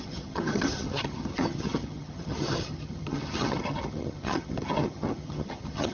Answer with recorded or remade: remade